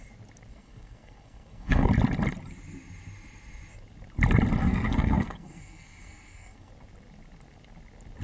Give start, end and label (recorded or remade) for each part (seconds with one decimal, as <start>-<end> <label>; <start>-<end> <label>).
0.0-0.5 recorded; 0.5-1.9 remade; 1.9-4.6 recorded; 4.6-6.7 remade; 6.7-8.2 recorded